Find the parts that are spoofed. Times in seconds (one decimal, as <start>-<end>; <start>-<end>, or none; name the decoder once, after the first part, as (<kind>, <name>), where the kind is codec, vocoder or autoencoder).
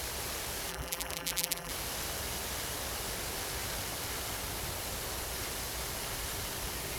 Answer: 0.7-1.7 (vocoder, BigVGAN v2)